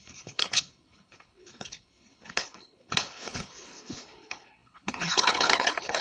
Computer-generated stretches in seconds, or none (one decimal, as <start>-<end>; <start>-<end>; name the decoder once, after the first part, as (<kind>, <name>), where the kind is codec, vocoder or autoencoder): 0.0-6.0 (codec, HILCodec)